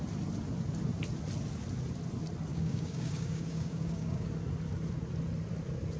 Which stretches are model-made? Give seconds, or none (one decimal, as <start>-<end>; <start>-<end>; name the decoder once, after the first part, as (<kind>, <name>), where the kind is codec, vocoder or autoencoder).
2.5-4.3 (codec, DAC)